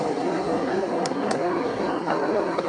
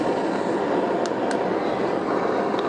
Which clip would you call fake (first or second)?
first